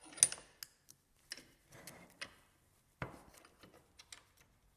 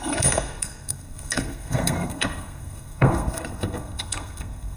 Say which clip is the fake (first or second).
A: second